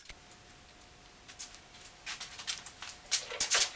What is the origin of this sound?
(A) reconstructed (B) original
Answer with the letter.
B